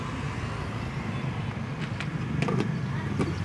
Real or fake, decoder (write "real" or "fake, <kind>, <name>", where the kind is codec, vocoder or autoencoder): real